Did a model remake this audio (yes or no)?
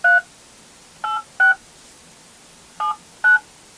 no